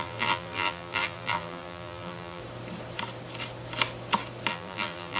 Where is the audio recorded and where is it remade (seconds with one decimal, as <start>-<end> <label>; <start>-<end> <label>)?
0.0-2.4 remade; 2.4-4.5 recorded; 4.5-5.2 remade